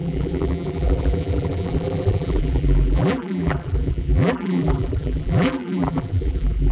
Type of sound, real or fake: fake